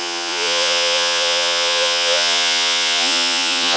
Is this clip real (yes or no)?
no